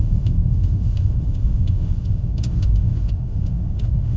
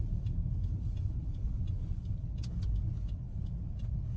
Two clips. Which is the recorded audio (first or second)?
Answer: second